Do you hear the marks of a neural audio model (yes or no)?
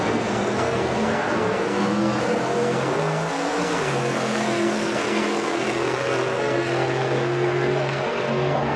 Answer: yes